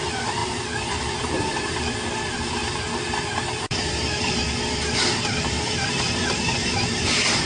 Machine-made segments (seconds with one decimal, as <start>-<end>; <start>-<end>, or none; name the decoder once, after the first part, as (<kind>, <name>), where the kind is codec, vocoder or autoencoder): 0.0-4.4 (vocoder, BigVGAN v2); 5.3-7.5